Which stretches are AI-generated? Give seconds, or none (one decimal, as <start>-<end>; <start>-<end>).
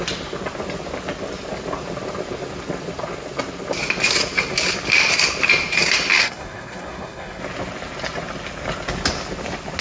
6.2-7.4